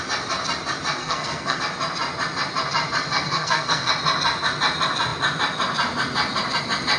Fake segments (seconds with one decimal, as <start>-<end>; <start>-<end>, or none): 1.0-1.6; 3.1-3.9